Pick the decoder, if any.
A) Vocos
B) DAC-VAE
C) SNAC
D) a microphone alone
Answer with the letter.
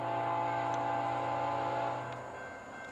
D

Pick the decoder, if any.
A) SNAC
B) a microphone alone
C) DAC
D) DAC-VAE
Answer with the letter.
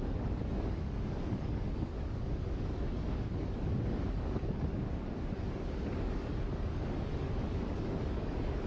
C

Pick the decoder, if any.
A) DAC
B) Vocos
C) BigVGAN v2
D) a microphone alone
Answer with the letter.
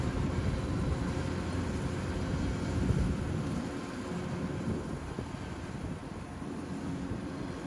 D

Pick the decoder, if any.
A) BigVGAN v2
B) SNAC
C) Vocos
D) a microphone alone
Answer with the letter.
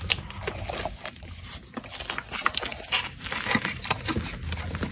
D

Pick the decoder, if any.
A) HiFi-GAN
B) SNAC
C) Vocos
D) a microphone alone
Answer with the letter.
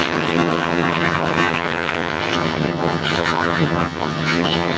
A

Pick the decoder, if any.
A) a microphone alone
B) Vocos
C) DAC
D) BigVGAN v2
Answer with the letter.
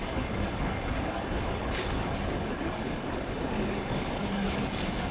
C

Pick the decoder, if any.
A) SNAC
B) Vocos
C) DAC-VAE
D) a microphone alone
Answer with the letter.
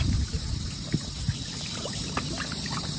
D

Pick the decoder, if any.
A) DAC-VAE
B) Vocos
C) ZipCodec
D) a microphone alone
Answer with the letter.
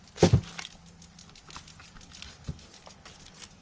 D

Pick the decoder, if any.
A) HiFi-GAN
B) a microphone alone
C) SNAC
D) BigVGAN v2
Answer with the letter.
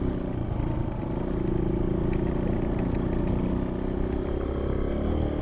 B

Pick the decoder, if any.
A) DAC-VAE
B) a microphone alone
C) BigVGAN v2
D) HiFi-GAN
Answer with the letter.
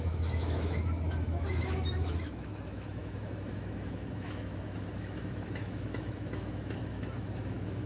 A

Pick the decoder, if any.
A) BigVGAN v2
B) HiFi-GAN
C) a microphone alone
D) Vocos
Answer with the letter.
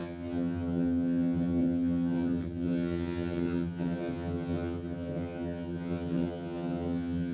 B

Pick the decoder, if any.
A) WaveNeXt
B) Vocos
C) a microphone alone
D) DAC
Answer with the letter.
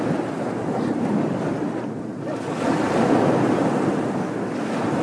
C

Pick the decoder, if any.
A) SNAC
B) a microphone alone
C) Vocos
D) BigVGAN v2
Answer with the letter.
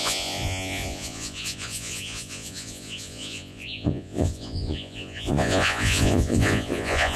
C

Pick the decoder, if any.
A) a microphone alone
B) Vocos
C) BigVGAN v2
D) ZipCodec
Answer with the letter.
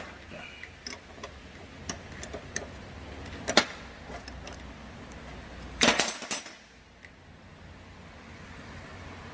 A